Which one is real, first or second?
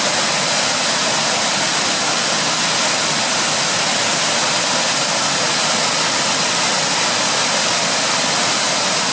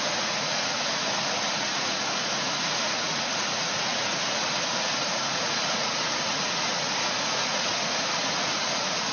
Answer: first